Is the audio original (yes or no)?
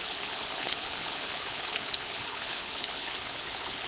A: no